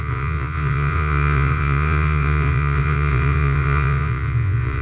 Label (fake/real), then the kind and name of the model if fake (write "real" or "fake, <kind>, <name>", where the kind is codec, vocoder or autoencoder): fake, vocoder, Vocos